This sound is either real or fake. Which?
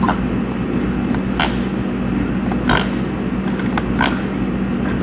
real